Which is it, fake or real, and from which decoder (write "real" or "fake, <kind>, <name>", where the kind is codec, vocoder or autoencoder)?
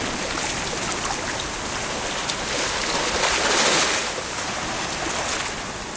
real